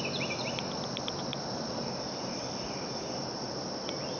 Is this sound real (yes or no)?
yes